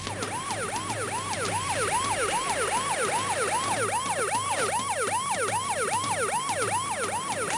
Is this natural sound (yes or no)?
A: yes